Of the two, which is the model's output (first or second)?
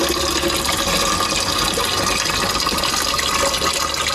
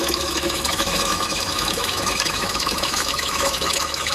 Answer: second